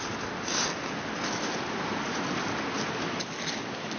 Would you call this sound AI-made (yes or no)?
no